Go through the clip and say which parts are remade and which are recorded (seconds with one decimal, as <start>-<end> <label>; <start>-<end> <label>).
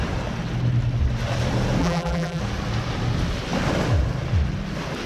0.0-1.8 recorded; 1.8-2.4 remade; 2.4-5.1 recorded